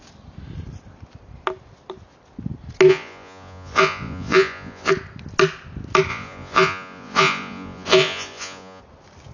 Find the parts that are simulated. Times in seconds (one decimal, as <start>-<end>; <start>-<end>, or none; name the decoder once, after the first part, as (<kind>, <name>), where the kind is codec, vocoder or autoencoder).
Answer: 2.9-4.9 (vocoder, Vocos); 6.1-8.8